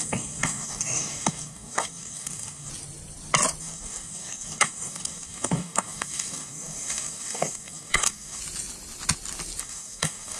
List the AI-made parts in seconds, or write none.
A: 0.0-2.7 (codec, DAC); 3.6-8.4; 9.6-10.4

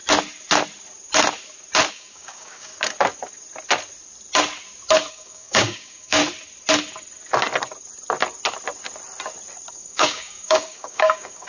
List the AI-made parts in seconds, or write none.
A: 1.9-2.7 (codec, DAC); 5.1-6.2; 9.7-11.5